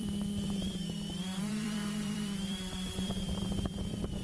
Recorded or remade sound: remade